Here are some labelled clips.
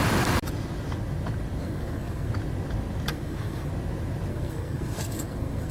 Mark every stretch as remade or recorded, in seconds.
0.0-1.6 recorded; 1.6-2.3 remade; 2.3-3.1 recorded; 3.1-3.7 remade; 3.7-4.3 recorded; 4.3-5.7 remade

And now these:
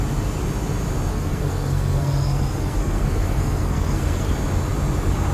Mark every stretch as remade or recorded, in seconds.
0.0-1.1 recorded; 1.1-4.3 remade; 4.3-5.3 recorded

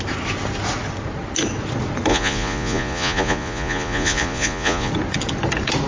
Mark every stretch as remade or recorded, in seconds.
0.0-2.1 recorded; 2.1-4.9 remade; 4.9-5.9 recorded

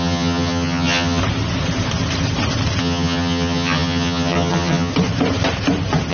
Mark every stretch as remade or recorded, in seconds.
0.0-1.2 remade; 1.2-2.8 recorded; 2.8-4.9 remade; 4.9-6.1 recorded

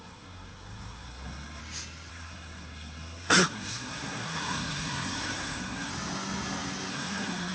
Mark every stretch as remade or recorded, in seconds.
0.0-1.6 remade; 1.6-2.1 recorded; 2.1-5.9 remade; 5.9-6.9 recorded; 6.9-7.5 remade